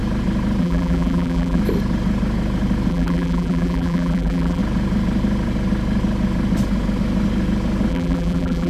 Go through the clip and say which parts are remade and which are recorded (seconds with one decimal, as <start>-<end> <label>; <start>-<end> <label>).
0.0-0.6 recorded; 0.6-1.6 remade; 1.6-2.9 recorded; 2.9-4.6 remade; 4.6-7.9 recorded; 7.9-8.7 remade

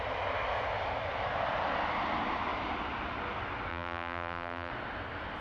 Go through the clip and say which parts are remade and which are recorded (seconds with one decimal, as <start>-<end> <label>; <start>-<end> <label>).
0.0-3.7 recorded; 3.7-4.7 remade; 4.7-5.4 recorded